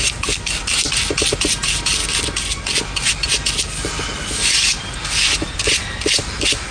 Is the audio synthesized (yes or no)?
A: no